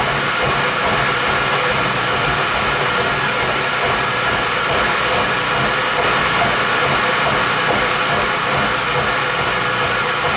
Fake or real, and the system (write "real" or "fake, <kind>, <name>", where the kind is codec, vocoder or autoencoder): real